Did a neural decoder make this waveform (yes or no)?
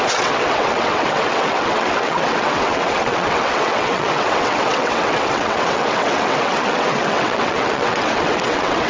yes